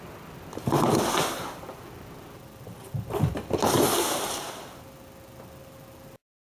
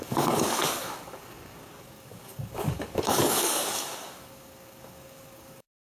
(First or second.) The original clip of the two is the first